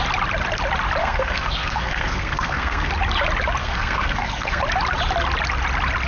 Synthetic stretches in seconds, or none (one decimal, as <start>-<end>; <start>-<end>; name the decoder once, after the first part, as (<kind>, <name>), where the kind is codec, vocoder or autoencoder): 1.0-2.9 (codec, SNAC); 3.6-4.6